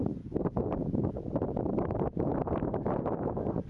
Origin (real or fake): fake